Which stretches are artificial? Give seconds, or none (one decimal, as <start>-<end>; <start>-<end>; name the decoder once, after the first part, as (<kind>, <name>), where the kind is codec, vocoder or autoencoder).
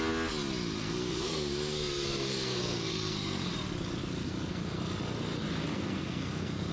0.8-3.5 (codec, SNAC); 4.2-4.8; 5.7-6.7